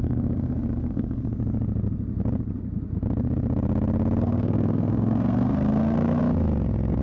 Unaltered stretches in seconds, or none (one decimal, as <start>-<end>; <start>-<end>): 1.3-4.2; 6.2-7.0